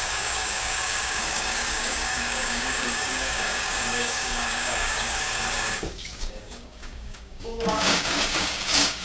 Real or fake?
fake